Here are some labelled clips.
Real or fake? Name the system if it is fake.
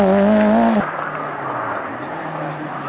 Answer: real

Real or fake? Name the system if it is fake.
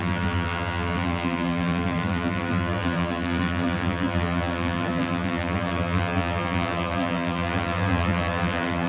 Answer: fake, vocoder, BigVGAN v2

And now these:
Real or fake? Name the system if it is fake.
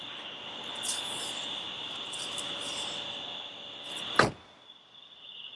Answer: real